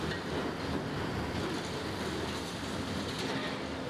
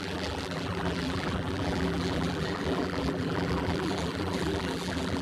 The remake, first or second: second